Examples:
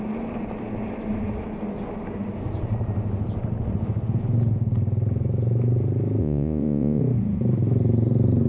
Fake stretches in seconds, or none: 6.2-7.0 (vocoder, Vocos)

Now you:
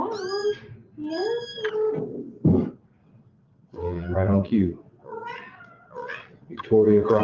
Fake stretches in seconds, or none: 3.0-7.2 (vocoder, WaveNeXt)